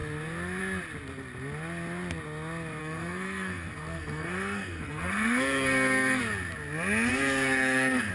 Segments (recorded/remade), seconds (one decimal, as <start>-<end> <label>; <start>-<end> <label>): 0.0-2.8 recorded; 2.8-6.2 remade; 6.2-7.1 recorded; 7.1-8.1 remade